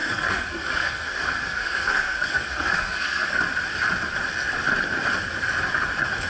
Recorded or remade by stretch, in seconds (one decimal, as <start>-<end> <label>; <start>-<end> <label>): 0.0-3.4 remade; 3.4-6.3 recorded